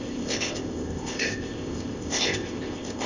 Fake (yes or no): yes